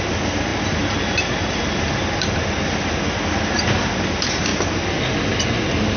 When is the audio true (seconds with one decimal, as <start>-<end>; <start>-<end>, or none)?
0.0-4.5; 5.0-6.0